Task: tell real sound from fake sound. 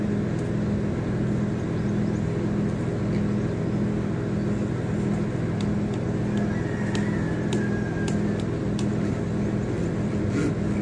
real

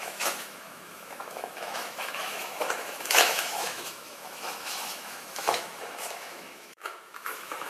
fake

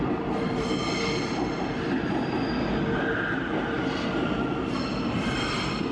real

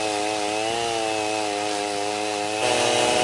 real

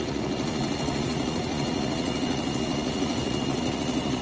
fake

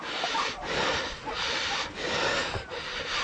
real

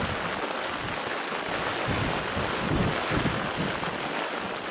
real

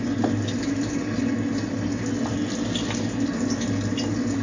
real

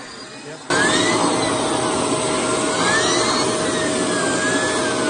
real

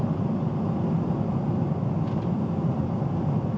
real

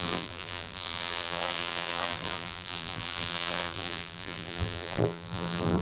fake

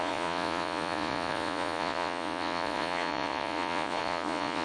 fake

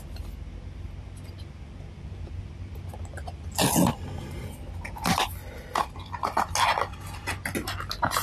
real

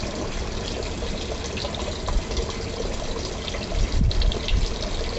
real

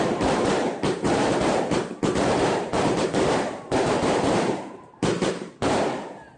fake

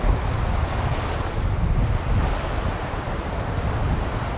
real